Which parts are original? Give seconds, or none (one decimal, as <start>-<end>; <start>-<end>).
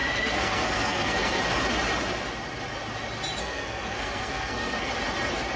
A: 1.4-3.4; 4.9-5.6